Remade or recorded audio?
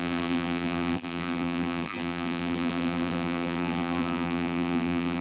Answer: remade